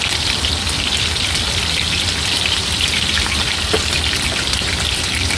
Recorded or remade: remade